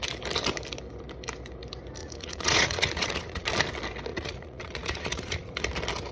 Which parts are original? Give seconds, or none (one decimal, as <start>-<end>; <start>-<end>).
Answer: 0.0-2.0; 3.5-4.1; 5.5-6.1